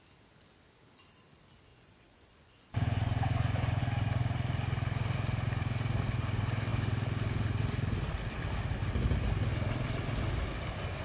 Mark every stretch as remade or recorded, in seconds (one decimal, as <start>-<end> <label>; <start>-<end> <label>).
0.0-1.7 recorded; 1.7-3.8 remade; 3.8-11.0 recorded